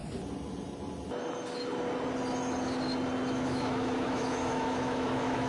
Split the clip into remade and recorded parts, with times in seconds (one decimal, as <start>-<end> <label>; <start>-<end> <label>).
0.0-3.3 recorded; 3.3-5.5 remade